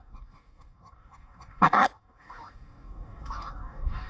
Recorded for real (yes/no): no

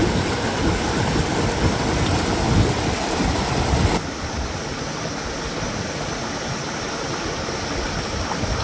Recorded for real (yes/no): yes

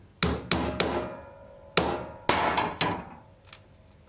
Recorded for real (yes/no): yes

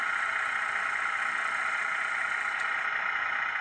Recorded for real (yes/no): yes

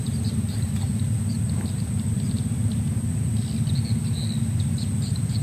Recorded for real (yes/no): yes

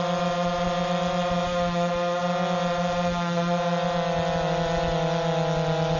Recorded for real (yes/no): yes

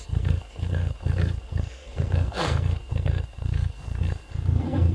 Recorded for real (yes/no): no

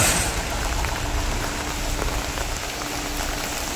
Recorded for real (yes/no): yes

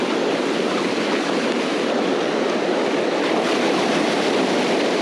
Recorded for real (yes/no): yes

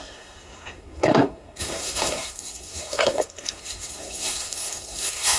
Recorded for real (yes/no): no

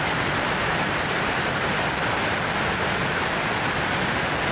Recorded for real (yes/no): yes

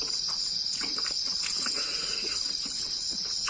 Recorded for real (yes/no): no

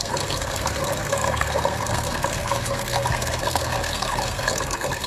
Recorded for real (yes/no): no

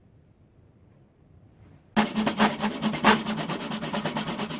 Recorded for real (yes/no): yes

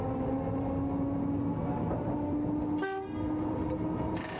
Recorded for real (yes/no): yes